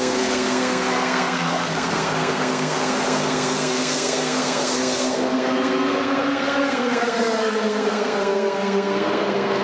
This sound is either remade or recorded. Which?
remade